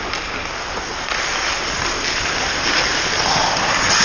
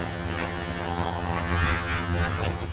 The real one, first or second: first